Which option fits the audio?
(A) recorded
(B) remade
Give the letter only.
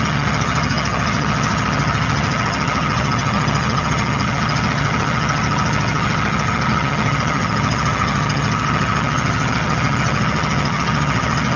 B